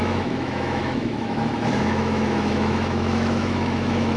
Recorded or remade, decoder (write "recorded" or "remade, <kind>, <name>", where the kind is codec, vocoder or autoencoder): remade, autoencoder, DAC-VAE